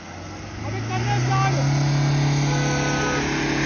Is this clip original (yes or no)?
yes